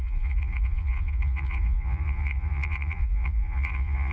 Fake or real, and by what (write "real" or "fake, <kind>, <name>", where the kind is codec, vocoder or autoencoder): fake, vocoder, Vocos